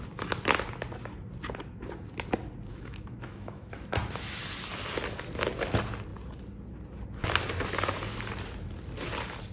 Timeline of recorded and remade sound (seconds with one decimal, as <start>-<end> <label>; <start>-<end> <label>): 0.0-2.7 recorded; 2.7-3.7 remade; 3.7-9.5 recorded